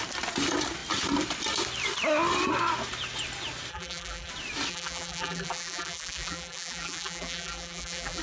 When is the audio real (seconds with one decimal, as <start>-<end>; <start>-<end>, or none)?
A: 0.0-3.7; 4.3-4.7